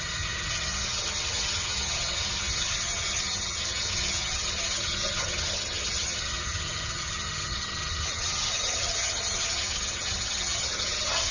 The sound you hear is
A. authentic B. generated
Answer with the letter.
B